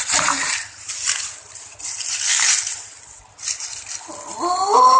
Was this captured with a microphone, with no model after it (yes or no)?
yes